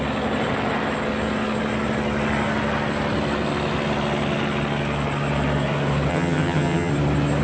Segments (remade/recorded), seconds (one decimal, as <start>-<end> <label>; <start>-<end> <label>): 0.0-6.1 recorded; 6.1-6.9 remade; 6.9-7.4 recorded